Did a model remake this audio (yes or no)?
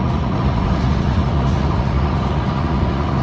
yes